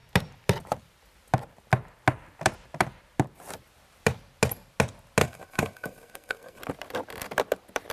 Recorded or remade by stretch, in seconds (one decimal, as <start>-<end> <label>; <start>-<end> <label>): 0.0-5.2 recorded; 5.2-6.6 remade; 6.6-7.9 recorded